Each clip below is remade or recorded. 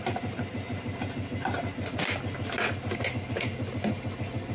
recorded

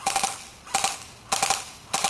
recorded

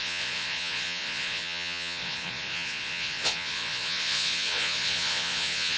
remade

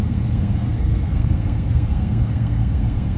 remade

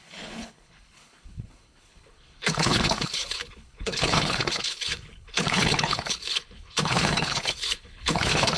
remade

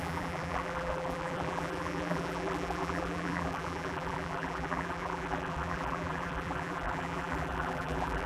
remade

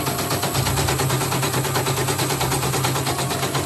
recorded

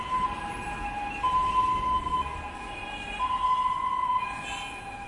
recorded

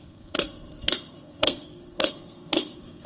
remade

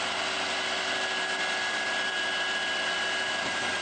remade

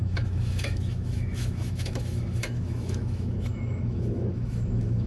remade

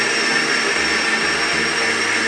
recorded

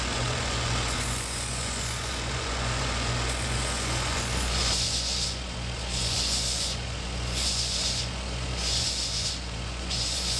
remade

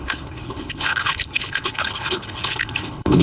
remade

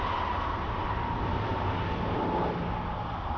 recorded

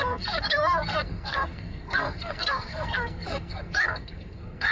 remade